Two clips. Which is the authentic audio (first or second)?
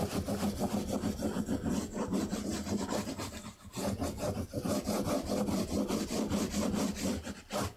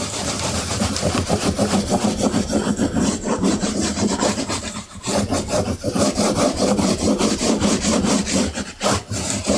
first